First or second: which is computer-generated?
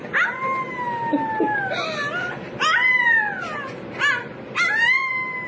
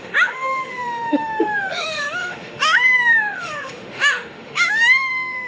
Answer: second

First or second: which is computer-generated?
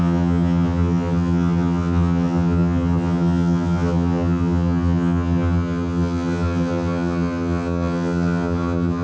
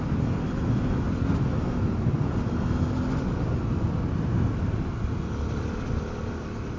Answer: first